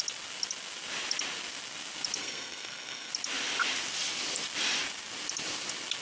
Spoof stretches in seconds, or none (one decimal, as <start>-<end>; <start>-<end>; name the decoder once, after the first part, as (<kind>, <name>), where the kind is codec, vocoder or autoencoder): 2.2-3.1 (codec, SNAC)